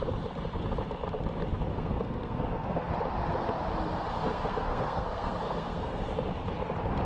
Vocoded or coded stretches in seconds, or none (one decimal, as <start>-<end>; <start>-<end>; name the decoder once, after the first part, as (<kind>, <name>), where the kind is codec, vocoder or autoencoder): 1.7-2.9 (codec, SNAC); 4.1-6.0